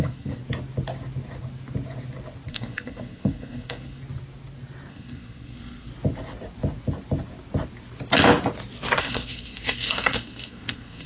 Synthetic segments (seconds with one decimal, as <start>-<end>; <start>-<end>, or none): 0.0-0.4; 2.5-4.0; 4.9-5.9; 9.0-11.1